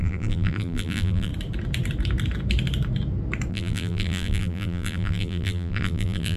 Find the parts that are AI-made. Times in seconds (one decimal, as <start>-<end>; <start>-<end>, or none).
0.0-1.3; 3.5-6.4